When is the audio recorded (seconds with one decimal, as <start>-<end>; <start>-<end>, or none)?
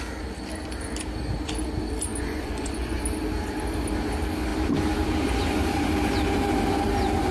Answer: 0.0-2.1; 3.0-7.3